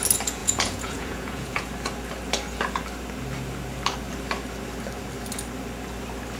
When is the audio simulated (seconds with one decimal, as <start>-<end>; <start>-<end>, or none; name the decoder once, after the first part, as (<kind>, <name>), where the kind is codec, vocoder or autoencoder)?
0.4-1.7 (vocoder, Vocos)